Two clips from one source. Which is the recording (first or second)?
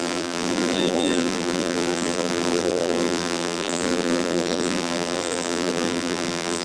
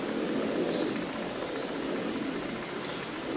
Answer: second